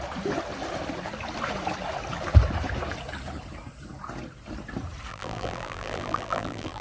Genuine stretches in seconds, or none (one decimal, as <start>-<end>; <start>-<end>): 0.0-5.1